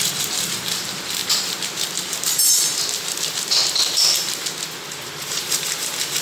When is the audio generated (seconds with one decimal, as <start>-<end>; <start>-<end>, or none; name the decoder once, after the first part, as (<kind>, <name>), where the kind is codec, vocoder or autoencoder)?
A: 0.0-1.2 (vocoder, BigVGAN v2); 4.9-6.2